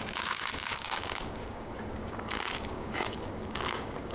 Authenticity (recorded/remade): remade